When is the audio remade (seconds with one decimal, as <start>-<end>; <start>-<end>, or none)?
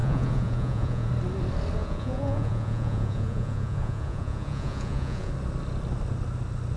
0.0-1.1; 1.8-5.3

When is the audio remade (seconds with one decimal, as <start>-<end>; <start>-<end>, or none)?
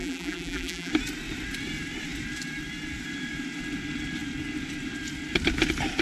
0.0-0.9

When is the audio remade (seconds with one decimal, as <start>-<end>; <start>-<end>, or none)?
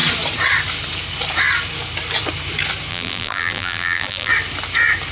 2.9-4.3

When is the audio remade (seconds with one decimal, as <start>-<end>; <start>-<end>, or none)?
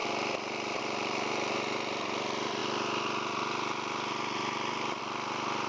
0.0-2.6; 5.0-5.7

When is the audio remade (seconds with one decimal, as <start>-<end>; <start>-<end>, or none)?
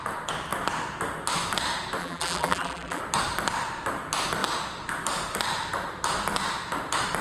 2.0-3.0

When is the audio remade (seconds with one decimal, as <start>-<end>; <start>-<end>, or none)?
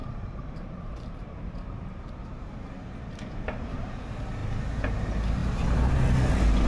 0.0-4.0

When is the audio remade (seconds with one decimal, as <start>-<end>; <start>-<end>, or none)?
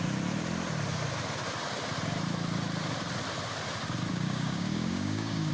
4.1-5.5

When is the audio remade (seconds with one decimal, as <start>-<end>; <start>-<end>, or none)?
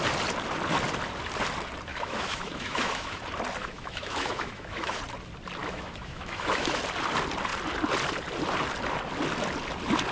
1.9-3.2; 3.6-5.0; 5.6-6.8